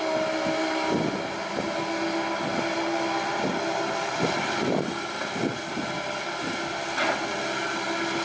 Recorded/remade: recorded